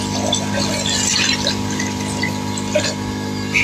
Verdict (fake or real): real